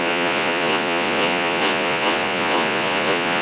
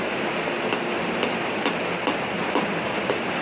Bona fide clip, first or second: second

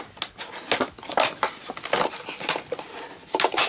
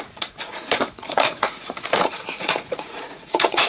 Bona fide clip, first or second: first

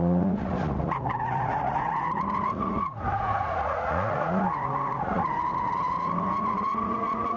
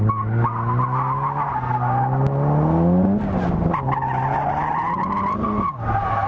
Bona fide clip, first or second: second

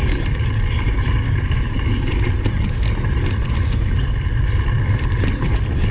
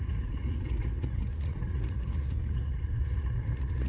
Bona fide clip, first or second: first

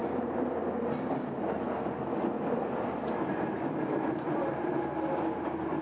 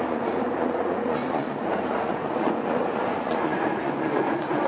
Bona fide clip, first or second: first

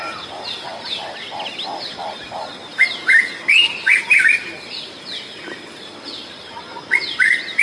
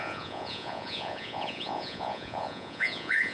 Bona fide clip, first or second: first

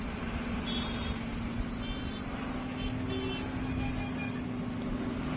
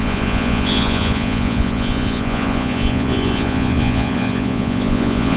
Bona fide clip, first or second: first